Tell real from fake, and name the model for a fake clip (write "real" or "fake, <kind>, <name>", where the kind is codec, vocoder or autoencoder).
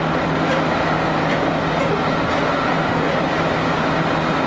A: real